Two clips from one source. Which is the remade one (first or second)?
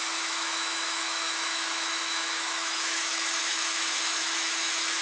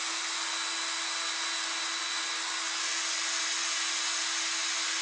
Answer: first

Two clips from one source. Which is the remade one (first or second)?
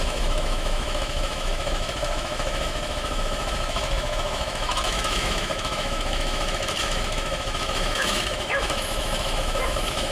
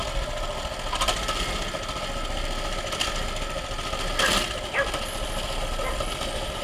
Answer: first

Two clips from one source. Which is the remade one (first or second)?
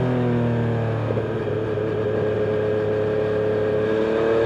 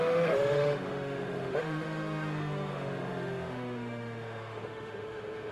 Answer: second